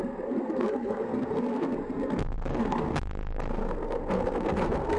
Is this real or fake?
fake